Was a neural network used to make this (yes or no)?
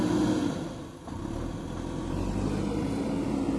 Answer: no